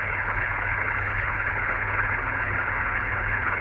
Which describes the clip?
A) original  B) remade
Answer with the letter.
B